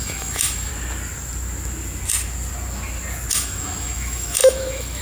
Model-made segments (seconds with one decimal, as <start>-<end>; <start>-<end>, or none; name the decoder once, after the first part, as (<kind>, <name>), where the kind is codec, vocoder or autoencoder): 0.0-0.7 (autoencoder, DAC-VAE); 3.3-5.0